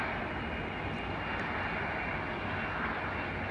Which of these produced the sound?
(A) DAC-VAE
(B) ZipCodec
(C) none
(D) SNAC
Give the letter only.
C